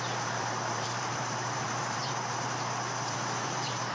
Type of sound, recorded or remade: remade